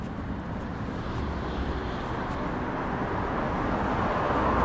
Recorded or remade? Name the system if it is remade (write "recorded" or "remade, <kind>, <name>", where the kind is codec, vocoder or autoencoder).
recorded